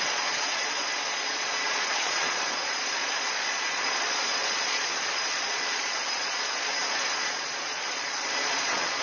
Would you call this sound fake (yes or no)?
yes